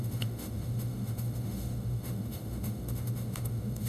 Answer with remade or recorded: remade